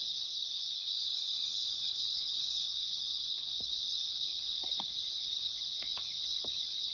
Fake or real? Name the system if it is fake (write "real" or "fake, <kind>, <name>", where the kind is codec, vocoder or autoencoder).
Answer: fake, codec, HILCodec